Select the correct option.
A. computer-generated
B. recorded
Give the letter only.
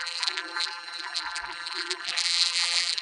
A